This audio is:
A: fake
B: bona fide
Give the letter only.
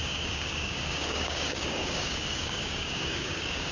A